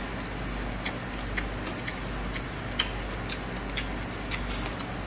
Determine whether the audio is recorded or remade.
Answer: recorded